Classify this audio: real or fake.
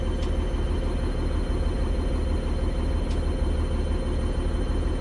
real